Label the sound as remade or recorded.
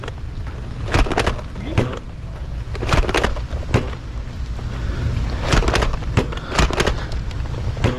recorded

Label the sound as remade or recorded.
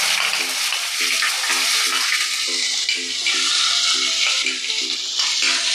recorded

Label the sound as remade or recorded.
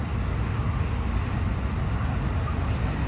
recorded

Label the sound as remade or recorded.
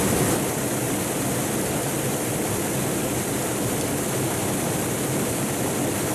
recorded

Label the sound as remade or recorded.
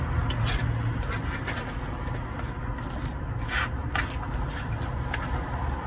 recorded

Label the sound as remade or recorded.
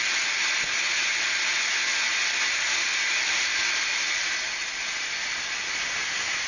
recorded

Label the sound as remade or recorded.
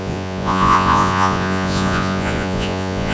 remade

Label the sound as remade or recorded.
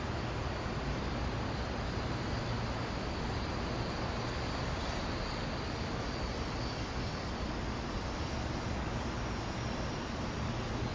recorded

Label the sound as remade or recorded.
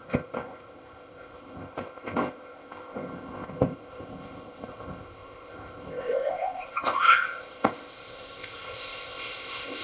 remade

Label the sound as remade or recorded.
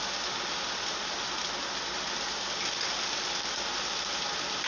recorded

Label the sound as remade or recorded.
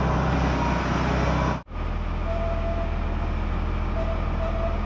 recorded